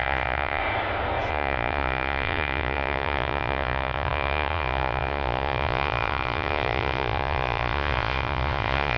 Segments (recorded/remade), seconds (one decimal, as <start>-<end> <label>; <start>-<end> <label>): 0.0-0.6 remade; 0.6-1.3 recorded; 1.3-9.0 remade